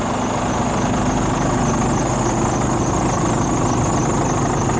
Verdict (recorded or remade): recorded